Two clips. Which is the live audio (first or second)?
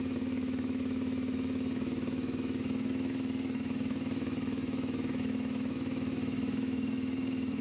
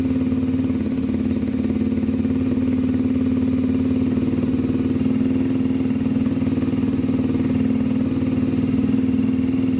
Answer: second